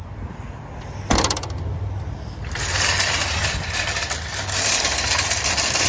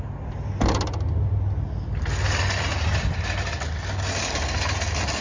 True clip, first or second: second